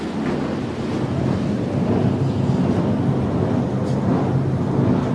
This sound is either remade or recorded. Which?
recorded